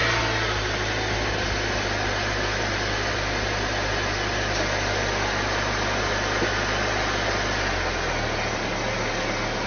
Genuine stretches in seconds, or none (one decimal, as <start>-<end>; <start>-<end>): 0.0-9.7